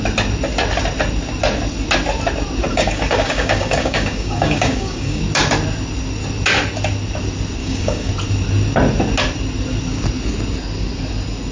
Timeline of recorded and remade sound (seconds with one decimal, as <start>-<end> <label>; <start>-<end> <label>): 0.0-2.7 recorded; 2.7-5.2 remade; 5.2-7.6 recorded; 7.6-8.1 remade; 8.1-11.5 recorded